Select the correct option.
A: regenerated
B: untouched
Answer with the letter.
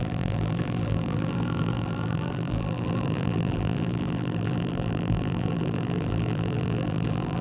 A